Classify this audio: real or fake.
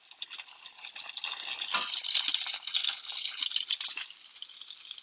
real